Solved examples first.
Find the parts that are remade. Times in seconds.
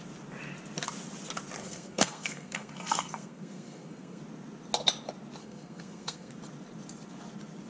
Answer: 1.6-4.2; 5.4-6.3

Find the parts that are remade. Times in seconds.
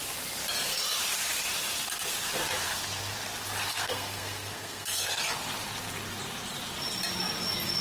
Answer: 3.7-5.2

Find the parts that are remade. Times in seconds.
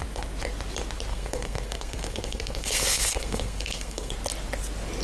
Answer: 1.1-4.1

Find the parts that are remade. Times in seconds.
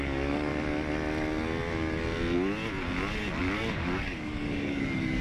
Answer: 0.0-0.5; 3.4-5.2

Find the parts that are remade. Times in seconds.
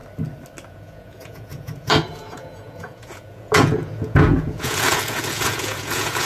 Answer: 0.7-6.3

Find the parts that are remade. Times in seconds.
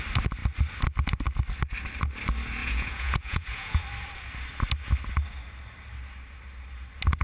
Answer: 2.6-3.8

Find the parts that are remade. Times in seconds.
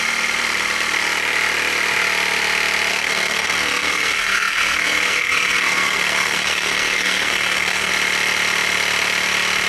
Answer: 2.9-7.9